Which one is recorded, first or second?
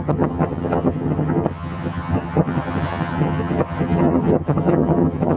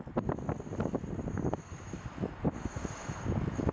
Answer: second